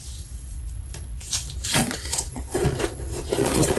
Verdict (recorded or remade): remade